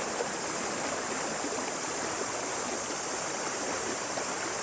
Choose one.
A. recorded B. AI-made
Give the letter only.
A